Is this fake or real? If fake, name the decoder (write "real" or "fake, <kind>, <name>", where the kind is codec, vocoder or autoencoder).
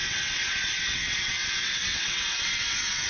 fake, vocoder, WaveNeXt